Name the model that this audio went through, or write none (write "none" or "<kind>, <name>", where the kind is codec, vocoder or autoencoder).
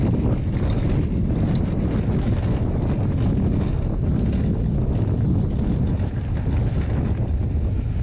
none